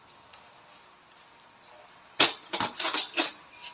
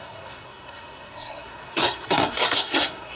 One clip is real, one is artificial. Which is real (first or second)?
first